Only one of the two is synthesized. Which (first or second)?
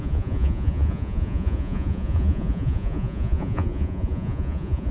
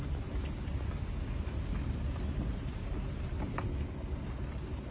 first